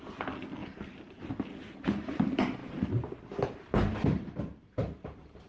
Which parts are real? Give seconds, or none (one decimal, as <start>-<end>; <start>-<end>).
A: 0.0-0.6; 1.3-2.6